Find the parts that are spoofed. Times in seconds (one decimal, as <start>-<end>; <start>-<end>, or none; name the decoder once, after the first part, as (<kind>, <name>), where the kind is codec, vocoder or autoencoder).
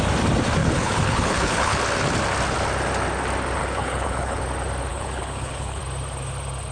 0.6-1.8 (codec, HILCodec); 3.6-4.4; 4.9-5.8